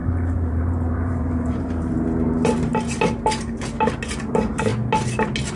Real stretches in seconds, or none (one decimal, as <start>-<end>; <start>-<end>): 2.7-4.3; 4.7-5.6